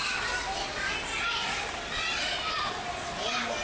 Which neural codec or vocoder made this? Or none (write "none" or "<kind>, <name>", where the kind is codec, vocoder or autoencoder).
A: none